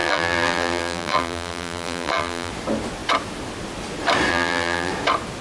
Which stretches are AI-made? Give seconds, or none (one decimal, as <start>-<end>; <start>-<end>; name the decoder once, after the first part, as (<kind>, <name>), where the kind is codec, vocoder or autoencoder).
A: 0.0-2.5 (vocoder, BigVGAN v2); 4.3-4.9

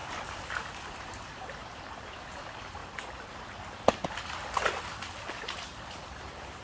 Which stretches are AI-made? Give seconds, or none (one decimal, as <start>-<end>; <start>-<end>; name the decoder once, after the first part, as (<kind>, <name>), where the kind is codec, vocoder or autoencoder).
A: 0.0-1.6 (vocoder, BigVGAN v2); 2.3-2.8; 5.4-6.6

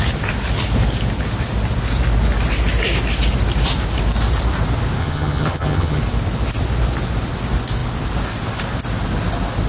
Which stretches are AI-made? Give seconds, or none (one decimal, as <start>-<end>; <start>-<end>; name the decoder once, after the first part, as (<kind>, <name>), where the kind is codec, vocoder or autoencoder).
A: 5.0-6.0 (vocoder, HiFi-GAN)